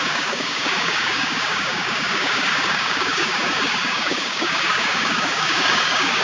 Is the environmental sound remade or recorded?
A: remade